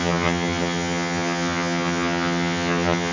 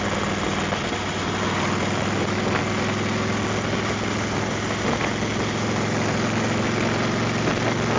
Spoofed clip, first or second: first